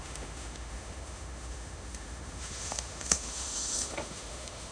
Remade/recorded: remade